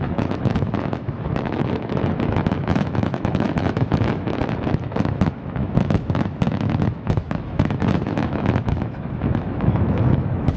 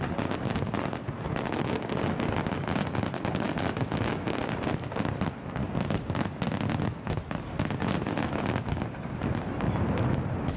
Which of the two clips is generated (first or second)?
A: first